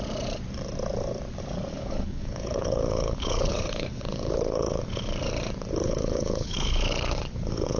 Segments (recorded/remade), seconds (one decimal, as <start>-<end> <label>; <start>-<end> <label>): 0.0-1.7 recorded; 1.7-4.8 remade; 4.8-5.8 recorded; 5.8-7.8 remade